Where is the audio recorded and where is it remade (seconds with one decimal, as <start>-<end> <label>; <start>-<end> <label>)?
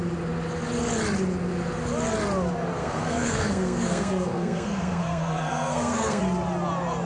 0.0-2.8 recorded; 2.8-6.2 remade; 6.2-7.1 recorded